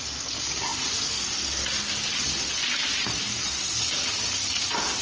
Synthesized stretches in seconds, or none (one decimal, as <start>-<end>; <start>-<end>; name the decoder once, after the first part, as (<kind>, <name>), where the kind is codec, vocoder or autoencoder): none